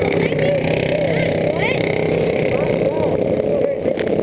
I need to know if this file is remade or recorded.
recorded